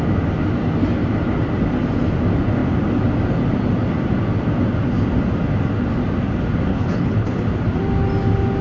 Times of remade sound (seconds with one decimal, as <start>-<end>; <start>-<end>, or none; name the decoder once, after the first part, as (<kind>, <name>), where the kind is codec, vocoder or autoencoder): 6.7-7.4 (codec, HILCodec)